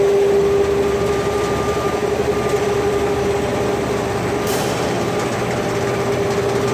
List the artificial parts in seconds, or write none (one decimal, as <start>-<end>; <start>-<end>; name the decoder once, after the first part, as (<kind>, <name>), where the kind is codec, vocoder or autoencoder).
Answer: none